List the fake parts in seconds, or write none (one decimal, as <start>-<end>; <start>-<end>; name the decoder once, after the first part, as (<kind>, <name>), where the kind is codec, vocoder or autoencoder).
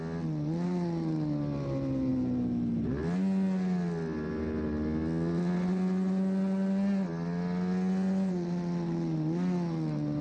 none